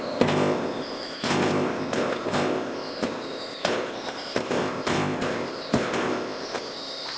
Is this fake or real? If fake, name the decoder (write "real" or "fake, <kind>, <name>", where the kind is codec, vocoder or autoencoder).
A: fake, codec, ZipCodec